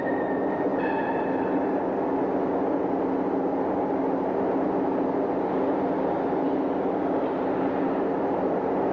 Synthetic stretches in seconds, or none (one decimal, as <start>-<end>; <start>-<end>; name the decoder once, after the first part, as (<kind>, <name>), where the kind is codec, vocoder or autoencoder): none